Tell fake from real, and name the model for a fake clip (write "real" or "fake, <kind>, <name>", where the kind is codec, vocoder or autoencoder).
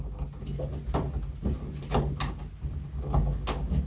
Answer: real